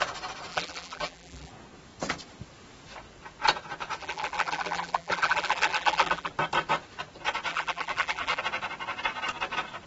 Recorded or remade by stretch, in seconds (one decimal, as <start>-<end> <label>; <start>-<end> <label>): 0.0-0.5 recorded; 0.5-1.5 remade; 1.5-4.0 recorded; 4.0-6.3 remade; 6.3-7.5 recorded; 7.5-8.4 remade; 8.4-9.9 recorded